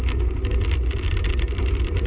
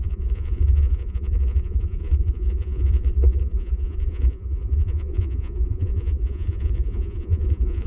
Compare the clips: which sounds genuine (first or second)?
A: first